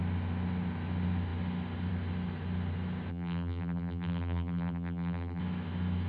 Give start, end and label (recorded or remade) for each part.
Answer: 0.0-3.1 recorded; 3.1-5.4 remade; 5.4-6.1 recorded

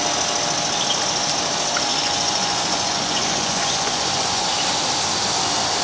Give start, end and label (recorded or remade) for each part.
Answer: 0.0-1.9 recorded; 1.9-4.5 remade; 4.5-5.8 recorded

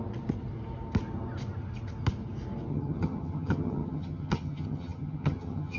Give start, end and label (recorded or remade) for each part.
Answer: 0.0-2.7 recorded; 2.7-5.8 remade

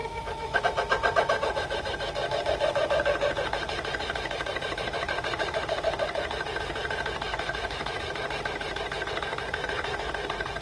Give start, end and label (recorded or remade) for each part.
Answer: 0.0-0.6 remade; 0.6-7.3 recorded; 7.3-8.0 remade; 8.0-10.6 recorded

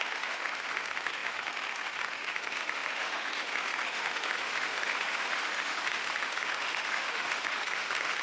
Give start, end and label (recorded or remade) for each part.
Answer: 0.0-8.2 remade

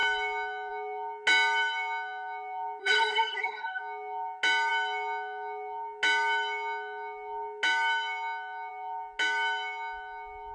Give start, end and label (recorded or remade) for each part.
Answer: 0.0-2.8 recorded; 2.8-3.8 remade; 3.8-10.5 recorded